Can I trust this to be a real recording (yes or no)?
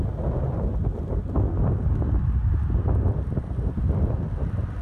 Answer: yes